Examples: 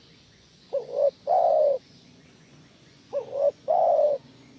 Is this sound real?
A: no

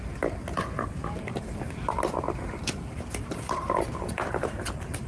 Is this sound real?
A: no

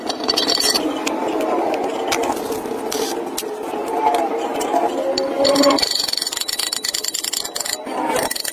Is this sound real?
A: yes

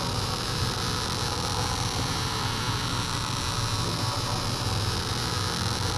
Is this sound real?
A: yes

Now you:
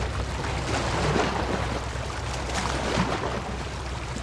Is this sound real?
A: yes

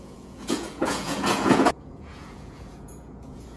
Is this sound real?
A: no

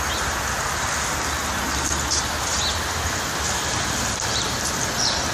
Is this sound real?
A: yes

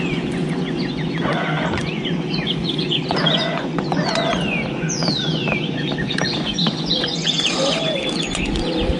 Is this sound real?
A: no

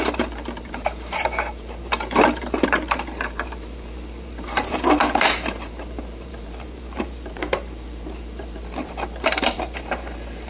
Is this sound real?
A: no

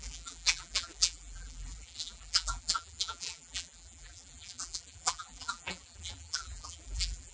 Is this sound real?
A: no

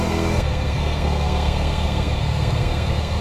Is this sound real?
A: no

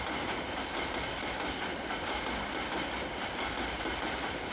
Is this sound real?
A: yes